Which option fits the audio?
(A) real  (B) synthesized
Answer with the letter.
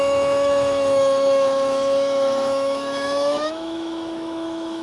B